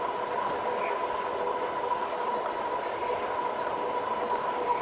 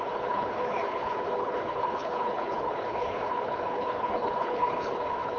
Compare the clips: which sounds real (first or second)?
first